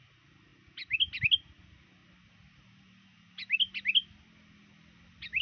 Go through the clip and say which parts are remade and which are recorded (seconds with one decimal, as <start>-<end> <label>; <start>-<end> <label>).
0.0-5.4 recorded